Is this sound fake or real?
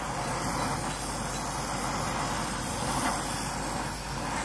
real